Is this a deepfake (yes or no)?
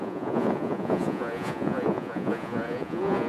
yes